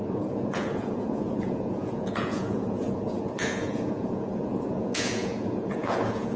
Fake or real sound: fake